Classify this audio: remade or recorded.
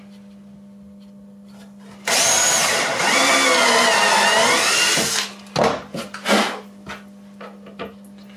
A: recorded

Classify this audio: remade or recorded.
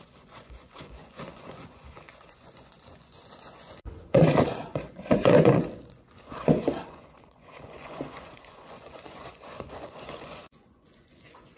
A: remade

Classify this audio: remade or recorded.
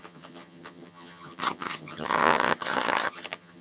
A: remade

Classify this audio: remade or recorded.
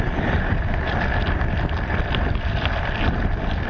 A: remade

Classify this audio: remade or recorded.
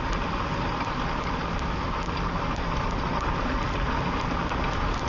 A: recorded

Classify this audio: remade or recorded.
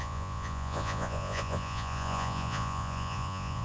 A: remade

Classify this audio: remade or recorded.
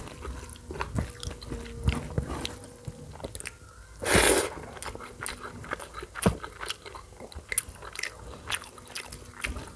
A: recorded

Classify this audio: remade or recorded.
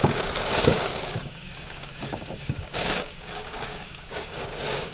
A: remade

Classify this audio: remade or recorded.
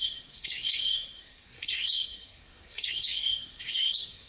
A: remade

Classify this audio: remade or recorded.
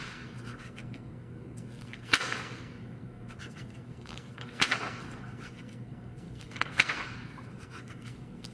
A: remade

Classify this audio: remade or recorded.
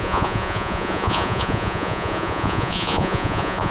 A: remade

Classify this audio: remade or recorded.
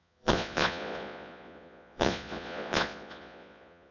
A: remade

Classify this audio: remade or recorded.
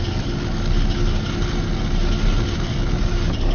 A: recorded